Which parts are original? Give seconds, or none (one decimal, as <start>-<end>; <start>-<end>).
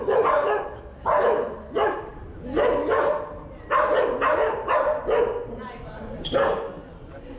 0.0-7.4